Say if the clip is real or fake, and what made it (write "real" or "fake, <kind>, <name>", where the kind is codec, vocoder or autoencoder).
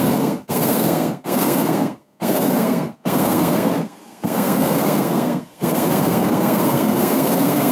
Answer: fake, codec, SNAC